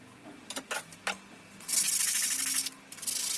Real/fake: real